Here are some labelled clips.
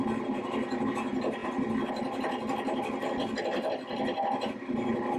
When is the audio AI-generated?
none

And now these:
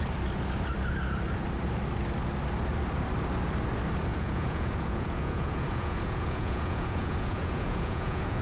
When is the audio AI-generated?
4.1-8.4

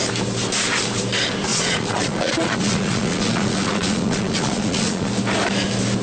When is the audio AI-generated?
1.5-5.1